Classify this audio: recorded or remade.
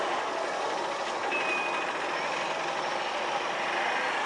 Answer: recorded